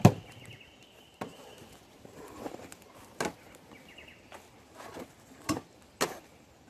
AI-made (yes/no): no